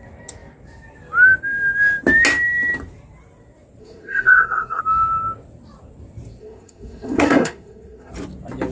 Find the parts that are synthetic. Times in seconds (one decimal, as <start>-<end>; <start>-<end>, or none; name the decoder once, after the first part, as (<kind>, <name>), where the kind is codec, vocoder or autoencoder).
3.8-4.8 (codec, SNAC); 6.4-8.1